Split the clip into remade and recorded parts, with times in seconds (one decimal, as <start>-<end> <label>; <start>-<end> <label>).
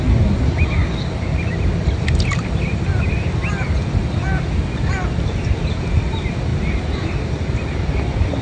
0.0-6.5 recorded; 6.5-7.1 remade; 7.1-8.4 recorded